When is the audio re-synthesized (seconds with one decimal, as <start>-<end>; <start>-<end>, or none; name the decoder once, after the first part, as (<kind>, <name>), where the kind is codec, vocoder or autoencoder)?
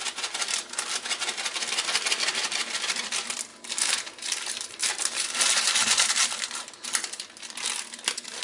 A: 3.5-6.1 (vocoder, BigVGAN v2)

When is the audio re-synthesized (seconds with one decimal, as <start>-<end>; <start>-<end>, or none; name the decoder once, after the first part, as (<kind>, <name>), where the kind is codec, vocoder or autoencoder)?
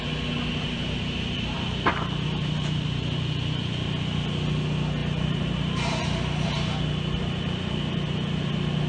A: 0.5-3.9 (vocoder, BigVGAN v2); 5.0-6.8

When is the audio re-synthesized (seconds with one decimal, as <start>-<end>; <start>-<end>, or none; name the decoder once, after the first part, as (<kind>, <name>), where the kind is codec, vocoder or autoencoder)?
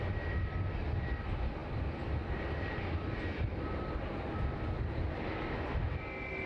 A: none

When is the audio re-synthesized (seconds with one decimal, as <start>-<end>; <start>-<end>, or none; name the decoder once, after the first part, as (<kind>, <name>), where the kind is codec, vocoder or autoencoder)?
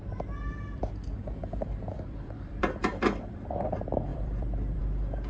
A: 1.0-3.5 (vocoder, BigVGAN v2); 4.1-4.8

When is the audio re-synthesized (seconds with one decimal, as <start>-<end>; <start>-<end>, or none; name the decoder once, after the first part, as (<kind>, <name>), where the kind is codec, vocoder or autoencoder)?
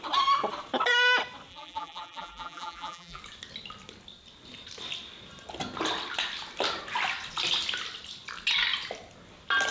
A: 1.5-3.2 (vocoder, BigVGAN v2)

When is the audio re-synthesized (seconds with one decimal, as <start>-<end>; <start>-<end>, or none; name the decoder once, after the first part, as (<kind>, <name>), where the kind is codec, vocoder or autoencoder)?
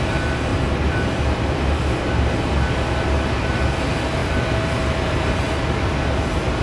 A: 0.5-2.1 (vocoder, BigVGAN v2); 4.2-5.4